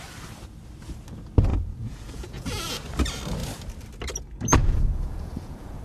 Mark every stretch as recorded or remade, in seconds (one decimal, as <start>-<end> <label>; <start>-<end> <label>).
0.0-1.5 recorded; 1.5-2.7 remade; 2.7-4.6 recorded; 4.6-5.8 remade